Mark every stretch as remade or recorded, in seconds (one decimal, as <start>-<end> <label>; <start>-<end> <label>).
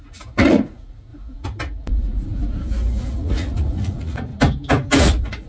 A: 0.0-2.3 remade; 2.3-3.1 recorded; 3.1-4.3 remade; 4.3-5.0 recorded; 5.0-5.5 remade